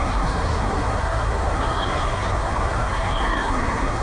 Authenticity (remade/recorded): remade